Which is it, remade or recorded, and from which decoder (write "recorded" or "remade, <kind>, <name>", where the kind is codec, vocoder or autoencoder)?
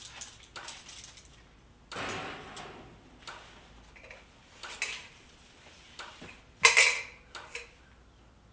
recorded